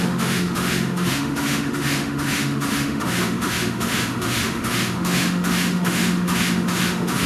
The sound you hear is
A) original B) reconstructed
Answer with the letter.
B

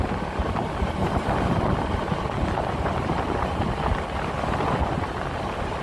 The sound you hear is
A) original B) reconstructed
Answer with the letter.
A